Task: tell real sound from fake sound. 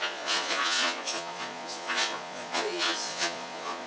fake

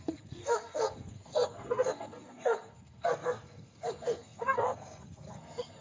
fake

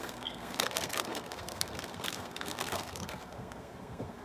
fake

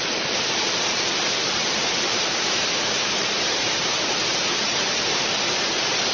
fake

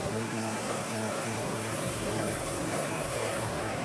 fake